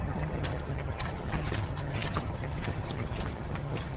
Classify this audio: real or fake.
fake